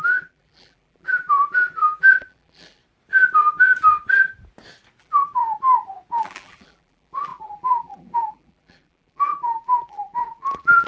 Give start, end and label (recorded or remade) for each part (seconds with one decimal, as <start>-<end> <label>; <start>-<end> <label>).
0.0-2.8 remade; 2.8-5.0 recorded; 5.0-5.4 remade; 5.4-6.2 recorded; 6.2-10.9 remade